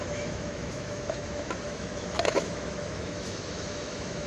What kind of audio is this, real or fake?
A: fake